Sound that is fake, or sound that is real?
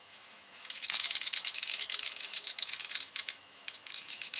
fake